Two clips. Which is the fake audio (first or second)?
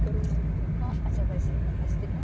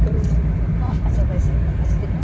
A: second